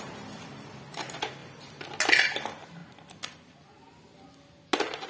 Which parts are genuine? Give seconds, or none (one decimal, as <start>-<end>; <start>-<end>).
0.0-5.1